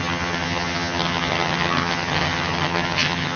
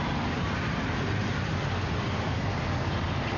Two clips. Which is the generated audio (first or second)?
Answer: first